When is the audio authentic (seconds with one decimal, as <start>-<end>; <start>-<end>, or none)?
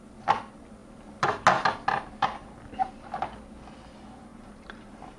0.0-4.3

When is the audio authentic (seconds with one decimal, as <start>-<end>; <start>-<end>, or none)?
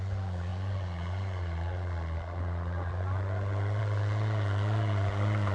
0.0-5.5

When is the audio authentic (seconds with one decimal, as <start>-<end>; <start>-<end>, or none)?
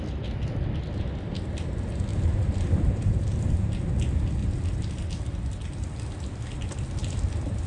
0.0-2.1; 3.9-4.4; 4.9-7.0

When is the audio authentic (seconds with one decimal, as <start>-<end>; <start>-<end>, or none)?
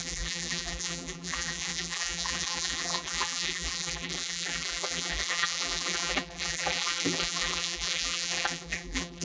none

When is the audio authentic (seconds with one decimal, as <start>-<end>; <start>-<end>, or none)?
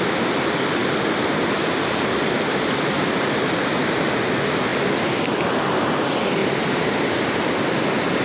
0.0-4.7; 5.6-6.4; 7.1-8.2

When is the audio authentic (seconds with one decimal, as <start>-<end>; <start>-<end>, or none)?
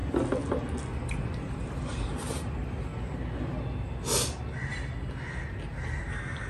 0.0-1.1; 2.9-6.1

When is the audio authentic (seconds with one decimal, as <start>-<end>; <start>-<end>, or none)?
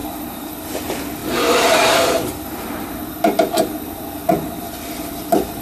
0.6-1.2; 3.1-4.2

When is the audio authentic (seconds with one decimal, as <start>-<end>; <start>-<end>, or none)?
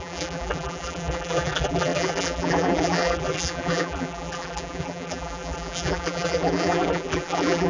none